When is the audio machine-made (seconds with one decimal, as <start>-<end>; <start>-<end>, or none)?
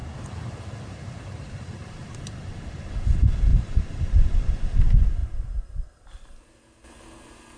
0.0-2.8; 3.5-4.1